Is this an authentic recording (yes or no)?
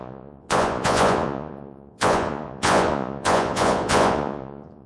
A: no